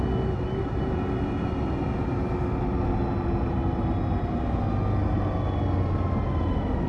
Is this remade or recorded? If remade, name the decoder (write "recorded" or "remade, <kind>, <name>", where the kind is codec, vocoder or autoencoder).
recorded